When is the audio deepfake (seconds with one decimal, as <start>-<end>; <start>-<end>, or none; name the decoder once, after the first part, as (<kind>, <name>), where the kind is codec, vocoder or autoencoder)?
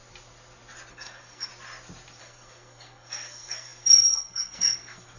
0.9-1.5 (codec, SNAC); 2.2-5.2